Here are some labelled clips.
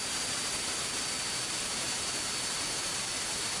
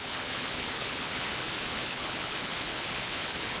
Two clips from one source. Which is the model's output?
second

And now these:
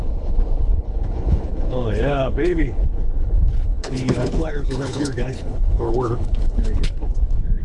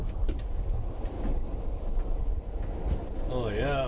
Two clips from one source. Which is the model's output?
first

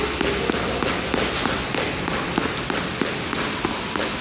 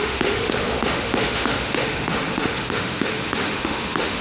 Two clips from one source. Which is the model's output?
second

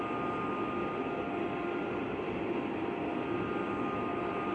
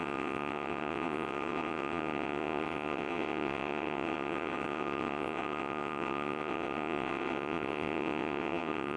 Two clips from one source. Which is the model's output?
second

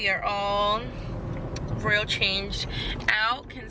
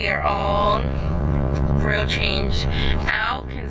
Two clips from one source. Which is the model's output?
second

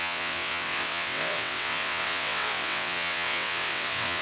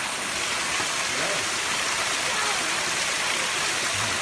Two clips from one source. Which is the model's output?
first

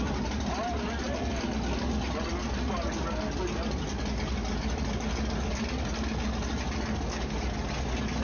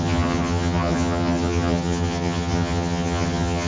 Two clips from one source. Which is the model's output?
second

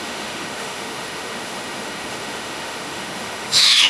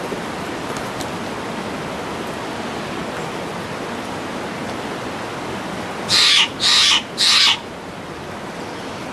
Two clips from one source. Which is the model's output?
first